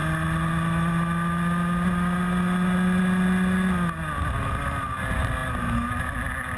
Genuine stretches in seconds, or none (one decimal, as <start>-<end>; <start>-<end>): 0.0-6.6